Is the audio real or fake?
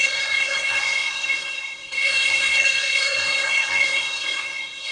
fake